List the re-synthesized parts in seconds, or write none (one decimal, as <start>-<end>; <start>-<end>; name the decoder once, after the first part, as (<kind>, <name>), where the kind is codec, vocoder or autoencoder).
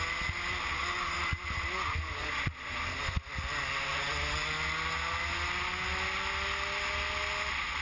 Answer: 2.2-2.8 (vocoder, Vocos)